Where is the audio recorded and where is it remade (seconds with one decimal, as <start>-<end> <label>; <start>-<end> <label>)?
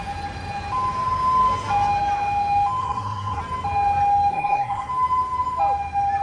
0.0-2.8 recorded; 2.8-3.4 remade; 3.4-4.3 recorded; 4.3-4.9 remade; 4.9-6.2 recorded